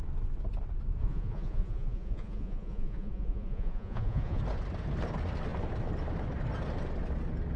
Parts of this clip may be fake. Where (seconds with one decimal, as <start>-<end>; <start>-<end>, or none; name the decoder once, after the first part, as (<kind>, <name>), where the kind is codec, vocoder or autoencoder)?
1.0-4.4 (vocoder, Vocos)